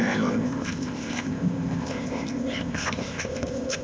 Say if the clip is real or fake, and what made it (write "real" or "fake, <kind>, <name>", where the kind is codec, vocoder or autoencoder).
fake, codec, ZipCodec